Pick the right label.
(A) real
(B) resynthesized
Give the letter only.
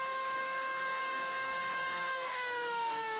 B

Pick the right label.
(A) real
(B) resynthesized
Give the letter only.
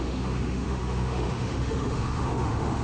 B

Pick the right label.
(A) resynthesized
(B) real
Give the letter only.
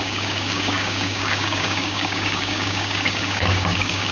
A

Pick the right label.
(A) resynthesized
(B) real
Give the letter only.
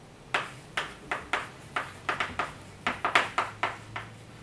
B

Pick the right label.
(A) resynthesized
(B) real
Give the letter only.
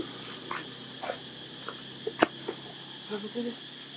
B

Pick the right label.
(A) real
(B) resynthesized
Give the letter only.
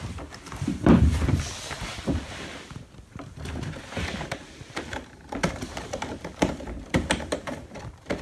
B